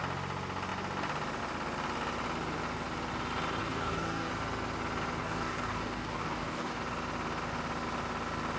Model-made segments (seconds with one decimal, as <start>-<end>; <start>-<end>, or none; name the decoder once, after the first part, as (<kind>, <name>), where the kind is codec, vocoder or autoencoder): 3.6-4.3 (codec, DAC); 5.2-6.8

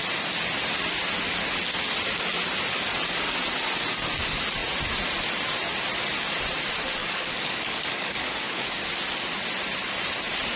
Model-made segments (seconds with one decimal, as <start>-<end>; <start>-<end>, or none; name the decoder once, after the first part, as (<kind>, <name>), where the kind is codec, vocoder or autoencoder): 7.0-8.7 (codec, DAC)

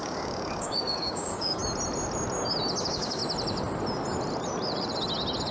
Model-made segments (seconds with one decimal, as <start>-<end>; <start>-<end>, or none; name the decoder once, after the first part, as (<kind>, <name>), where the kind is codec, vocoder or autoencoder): 0.0-1.6 (codec, DAC); 2.8-3.2

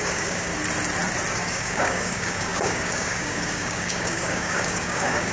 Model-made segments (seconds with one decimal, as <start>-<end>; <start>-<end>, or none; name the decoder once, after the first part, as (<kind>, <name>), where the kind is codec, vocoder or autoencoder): 0.0-0.5 (codec, DAC); 1.3-5.3

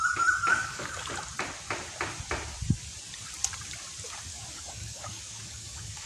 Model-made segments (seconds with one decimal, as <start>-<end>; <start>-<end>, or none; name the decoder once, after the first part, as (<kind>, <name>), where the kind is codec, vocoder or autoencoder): 0.5-1.1 (codec, DAC); 4.3-6.1